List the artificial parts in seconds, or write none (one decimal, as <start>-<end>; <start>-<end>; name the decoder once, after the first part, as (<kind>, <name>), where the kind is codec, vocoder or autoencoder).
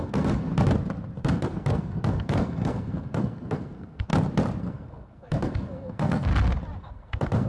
0.0-0.5 (codec, SNAC); 1.2-4.1; 4.6-6.3; 6.8-7.5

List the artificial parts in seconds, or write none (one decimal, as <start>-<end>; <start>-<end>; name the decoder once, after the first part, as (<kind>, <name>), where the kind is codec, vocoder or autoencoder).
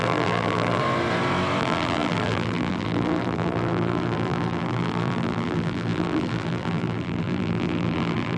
0.0-0.8 (vocoder, BigVGAN v2); 1.6-8.4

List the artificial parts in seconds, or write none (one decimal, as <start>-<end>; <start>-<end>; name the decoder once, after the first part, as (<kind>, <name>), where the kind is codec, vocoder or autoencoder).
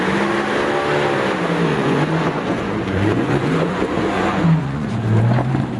1.7-5.0 (vocoder, Vocos)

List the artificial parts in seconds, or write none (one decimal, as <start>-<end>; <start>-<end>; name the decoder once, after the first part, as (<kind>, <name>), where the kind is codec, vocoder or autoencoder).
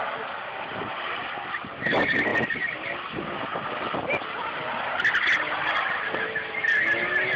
none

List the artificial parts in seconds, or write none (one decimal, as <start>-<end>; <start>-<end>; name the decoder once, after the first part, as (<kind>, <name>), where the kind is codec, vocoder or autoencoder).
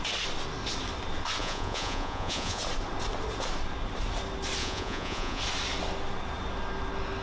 1.4-2.6 (vocoder, Vocos); 4.6-5.4